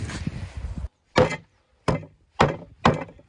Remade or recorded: recorded